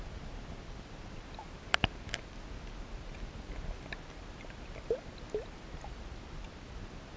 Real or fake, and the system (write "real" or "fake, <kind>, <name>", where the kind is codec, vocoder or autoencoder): real